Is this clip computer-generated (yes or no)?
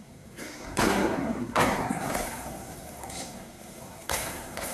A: yes